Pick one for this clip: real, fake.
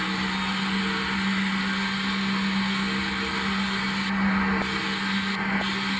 real